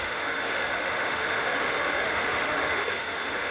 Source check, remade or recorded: remade